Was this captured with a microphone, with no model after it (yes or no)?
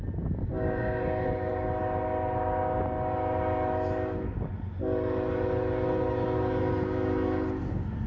yes